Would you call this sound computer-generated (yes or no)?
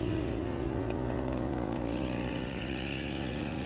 yes